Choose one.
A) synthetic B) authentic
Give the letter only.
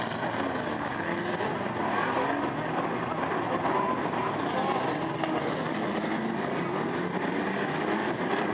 B